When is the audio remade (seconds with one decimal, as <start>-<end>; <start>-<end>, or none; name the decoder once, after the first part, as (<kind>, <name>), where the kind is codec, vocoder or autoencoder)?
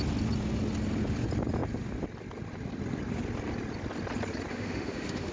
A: 4.5-5.3 (autoencoder, DAC-VAE)